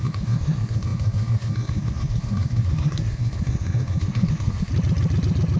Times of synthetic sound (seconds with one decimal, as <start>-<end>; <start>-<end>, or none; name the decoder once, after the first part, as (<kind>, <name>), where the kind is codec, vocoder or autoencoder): 0.0-4.7 (codec, SNAC)